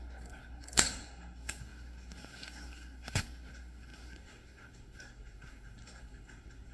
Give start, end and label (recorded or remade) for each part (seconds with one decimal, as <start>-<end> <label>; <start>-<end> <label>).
0.0-6.7 remade

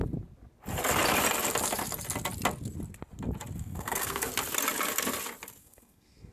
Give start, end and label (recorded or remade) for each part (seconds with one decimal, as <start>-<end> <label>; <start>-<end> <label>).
0.0-3.6 recorded; 3.6-4.3 remade; 4.3-5.6 recorded; 5.6-6.3 remade